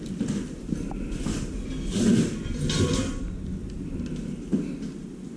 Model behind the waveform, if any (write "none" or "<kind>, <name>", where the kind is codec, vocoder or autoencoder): none